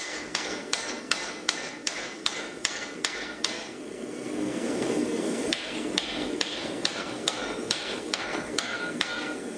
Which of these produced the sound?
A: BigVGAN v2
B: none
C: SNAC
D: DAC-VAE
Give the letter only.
C